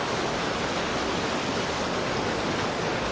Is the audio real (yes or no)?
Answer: yes